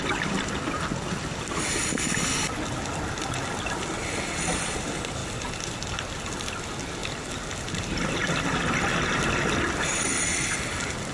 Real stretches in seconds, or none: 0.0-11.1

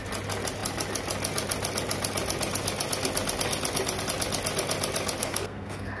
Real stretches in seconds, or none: 0.0-5.2

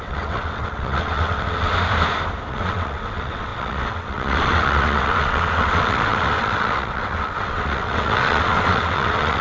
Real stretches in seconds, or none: 1.7-2.5

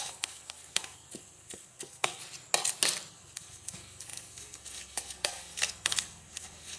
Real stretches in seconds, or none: 2.2-3.1

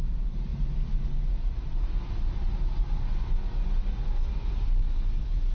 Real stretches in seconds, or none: 0.0-5.5